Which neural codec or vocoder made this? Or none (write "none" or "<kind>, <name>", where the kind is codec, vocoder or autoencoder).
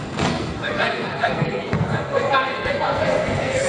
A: codec, SNAC